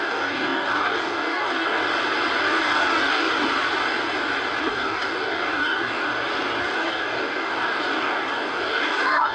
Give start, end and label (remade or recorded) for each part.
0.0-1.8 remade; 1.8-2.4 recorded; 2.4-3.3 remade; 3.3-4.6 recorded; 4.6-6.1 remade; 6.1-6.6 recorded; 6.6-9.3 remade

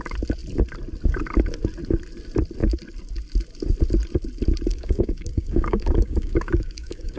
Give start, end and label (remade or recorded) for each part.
0.0-4.7 recorded; 4.7-7.2 remade

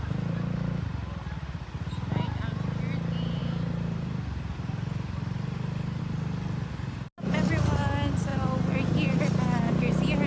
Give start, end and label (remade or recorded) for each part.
0.0-10.3 recorded

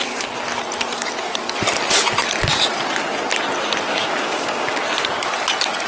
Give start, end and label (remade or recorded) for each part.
0.0-3.9 recorded; 3.9-4.8 remade; 4.8-5.9 recorded

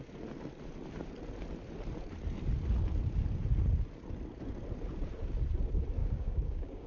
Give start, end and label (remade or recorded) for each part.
0.0-6.0 recorded; 6.0-6.9 remade